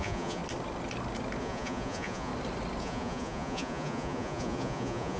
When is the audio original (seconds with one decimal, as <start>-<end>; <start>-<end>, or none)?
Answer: 0.4-1.4; 2.3-2.8